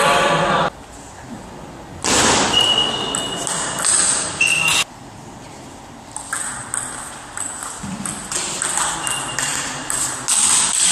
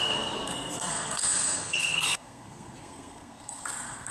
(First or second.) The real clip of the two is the first